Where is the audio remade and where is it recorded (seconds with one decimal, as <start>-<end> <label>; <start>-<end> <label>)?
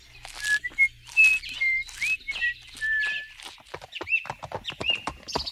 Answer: 0.0-5.5 recorded